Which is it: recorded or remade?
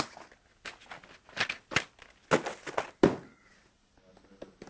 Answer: recorded